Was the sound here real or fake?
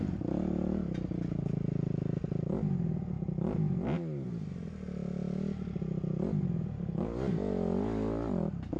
real